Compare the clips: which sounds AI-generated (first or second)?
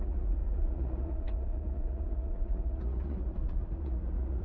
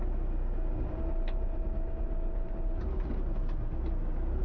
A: first